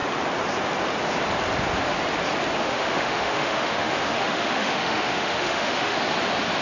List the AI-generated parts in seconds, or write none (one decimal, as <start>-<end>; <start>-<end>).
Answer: 2.6-6.0